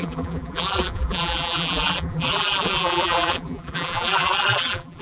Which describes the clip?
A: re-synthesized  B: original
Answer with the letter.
A